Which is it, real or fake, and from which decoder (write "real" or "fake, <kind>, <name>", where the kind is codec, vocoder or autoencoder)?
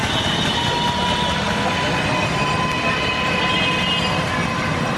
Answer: real